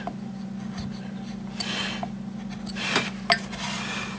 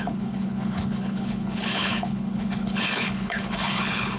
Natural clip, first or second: first